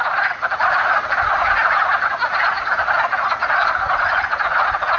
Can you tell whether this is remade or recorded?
recorded